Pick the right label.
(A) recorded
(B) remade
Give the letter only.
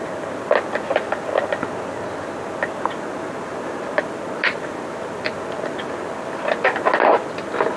A